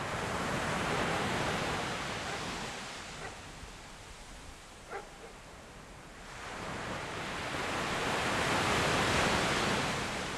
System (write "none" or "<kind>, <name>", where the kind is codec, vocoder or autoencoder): vocoder, BigVGAN v2